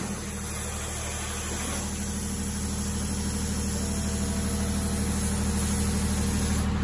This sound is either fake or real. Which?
real